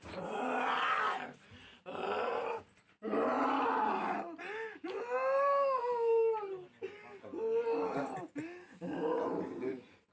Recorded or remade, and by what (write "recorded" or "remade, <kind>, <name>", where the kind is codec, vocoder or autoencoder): recorded